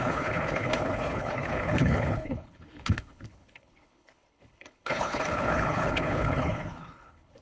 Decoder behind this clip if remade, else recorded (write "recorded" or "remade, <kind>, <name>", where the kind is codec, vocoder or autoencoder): remade, codec, HILCodec